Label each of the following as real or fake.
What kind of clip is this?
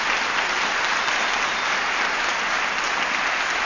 real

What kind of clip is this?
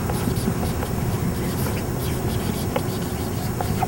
real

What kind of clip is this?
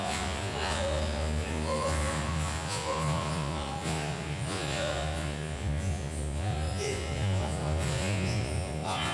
fake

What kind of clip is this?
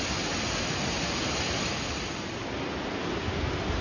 real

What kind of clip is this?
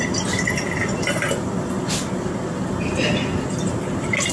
real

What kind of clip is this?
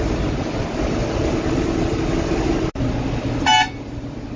real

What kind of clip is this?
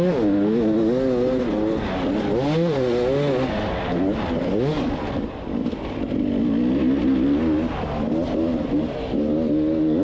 real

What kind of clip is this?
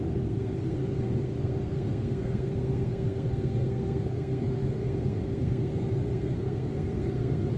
fake